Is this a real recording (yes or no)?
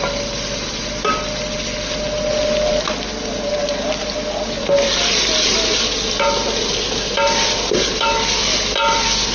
yes